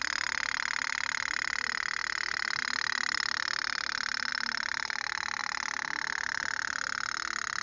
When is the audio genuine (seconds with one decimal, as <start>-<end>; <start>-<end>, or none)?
0.0-7.6